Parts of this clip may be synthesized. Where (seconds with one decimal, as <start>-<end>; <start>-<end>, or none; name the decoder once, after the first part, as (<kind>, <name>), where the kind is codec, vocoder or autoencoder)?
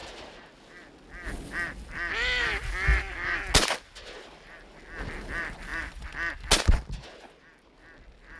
none